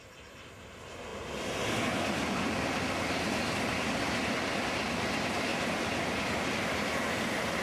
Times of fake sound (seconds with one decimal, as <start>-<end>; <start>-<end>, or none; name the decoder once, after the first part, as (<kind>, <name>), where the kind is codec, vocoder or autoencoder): 5.5-6.3 (vocoder, BigVGAN v2)